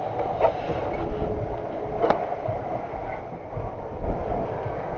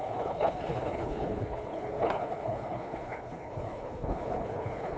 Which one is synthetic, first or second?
second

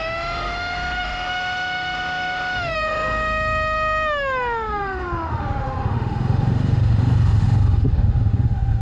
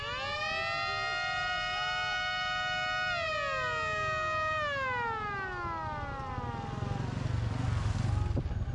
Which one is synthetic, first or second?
first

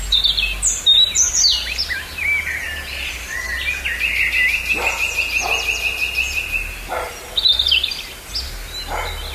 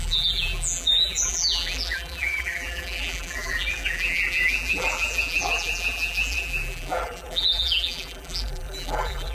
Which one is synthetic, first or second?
second